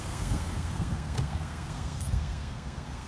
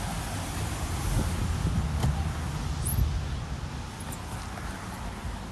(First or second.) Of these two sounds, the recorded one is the second